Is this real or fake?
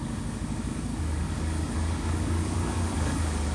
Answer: fake